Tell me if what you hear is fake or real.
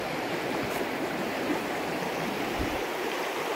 fake